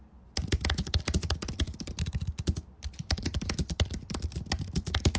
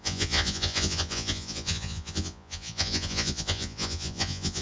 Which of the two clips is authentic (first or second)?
first